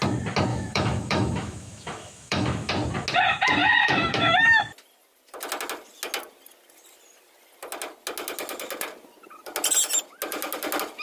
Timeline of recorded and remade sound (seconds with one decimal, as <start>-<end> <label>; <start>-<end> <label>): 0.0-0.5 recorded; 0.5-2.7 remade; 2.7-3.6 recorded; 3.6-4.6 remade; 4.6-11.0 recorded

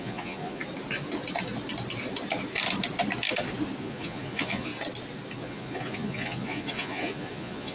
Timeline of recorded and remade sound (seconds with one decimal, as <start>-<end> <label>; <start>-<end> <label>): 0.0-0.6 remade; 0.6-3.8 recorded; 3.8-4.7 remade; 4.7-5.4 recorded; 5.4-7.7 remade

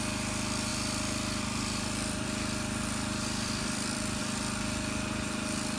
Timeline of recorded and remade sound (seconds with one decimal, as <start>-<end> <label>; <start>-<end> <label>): 0.0-0.7 recorded; 0.7-4.2 remade; 4.2-5.8 recorded

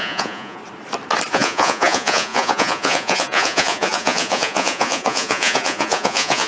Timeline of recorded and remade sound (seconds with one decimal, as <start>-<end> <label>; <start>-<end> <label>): 0.0-0.6 remade; 0.6-1.3 recorded; 1.3-6.5 remade